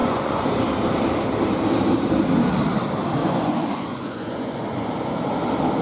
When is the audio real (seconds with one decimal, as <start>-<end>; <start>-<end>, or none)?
0.5-3.2; 4.9-5.8